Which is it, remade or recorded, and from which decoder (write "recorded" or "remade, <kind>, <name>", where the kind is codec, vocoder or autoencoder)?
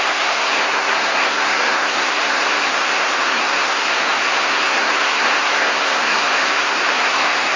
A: remade, codec, SNAC